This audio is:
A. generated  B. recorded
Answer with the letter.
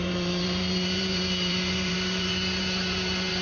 A